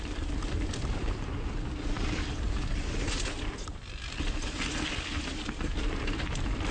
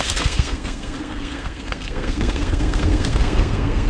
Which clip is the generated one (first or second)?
second